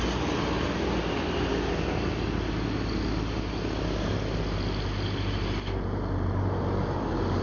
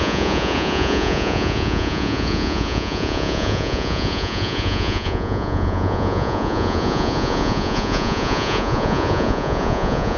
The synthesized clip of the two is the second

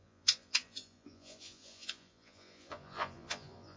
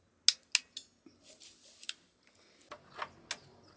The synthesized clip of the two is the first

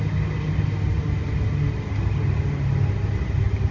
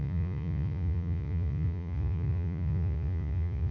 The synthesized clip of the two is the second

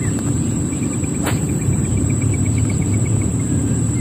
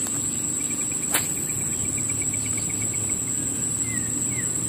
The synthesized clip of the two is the first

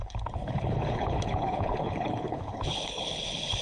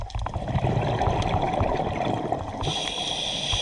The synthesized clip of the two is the first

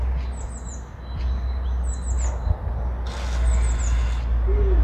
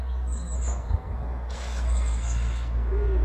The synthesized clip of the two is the second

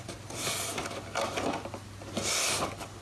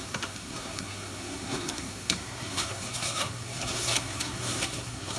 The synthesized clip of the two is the second